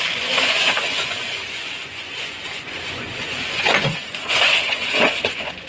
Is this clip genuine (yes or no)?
no